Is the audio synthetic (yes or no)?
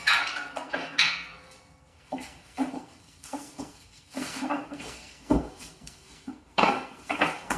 yes